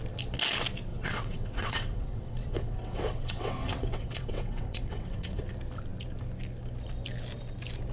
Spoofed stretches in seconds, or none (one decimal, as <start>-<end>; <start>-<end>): 0.9-5.4